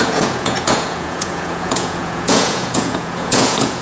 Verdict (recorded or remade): remade